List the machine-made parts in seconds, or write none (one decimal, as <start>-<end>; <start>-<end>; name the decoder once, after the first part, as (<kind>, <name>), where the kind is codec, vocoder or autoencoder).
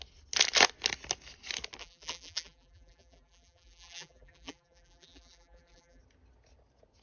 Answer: 1.8-6.0 (vocoder, BigVGAN v2)